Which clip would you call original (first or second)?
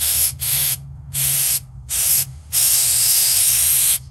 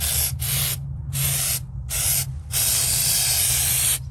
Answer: second